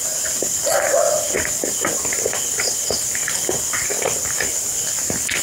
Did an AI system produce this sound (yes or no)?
no